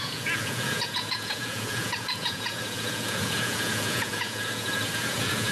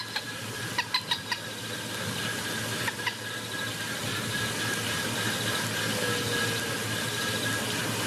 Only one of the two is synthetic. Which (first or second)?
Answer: first